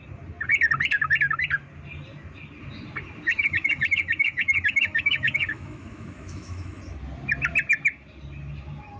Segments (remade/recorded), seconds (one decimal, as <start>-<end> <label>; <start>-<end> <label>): 0.0-3.3 recorded; 3.3-6.8 remade; 6.8-9.0 recorded